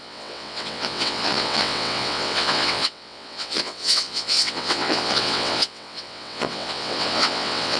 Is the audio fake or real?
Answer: fake